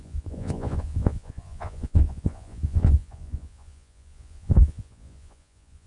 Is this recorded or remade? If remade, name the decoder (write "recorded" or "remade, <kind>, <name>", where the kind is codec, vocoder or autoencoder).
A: remade, vocoder, Vocos